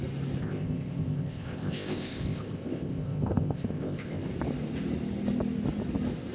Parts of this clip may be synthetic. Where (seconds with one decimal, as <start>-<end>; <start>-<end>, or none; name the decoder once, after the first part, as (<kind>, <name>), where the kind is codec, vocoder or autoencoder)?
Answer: 0.4-4.2 (codec, ZipCodec)